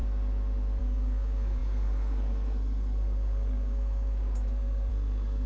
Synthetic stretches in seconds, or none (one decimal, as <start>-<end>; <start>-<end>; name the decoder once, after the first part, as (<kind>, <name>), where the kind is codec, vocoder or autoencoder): 0.8-5.5 (codec, SNAC)